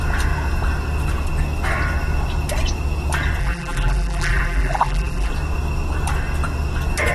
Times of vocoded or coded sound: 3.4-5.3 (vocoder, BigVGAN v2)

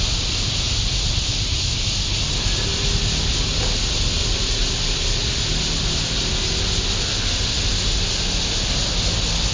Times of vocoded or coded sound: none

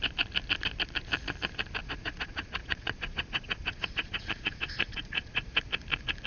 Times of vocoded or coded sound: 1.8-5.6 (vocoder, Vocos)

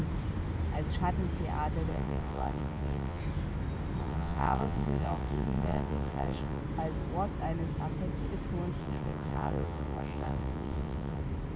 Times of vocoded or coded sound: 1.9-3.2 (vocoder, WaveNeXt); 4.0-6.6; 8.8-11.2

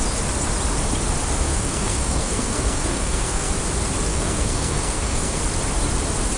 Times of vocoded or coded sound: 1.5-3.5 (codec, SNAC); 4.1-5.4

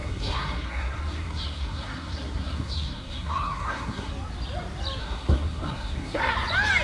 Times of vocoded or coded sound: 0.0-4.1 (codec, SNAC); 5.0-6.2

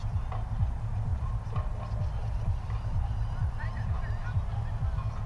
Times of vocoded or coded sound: none